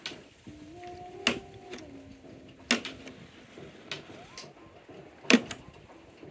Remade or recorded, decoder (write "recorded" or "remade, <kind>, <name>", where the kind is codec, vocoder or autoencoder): recorded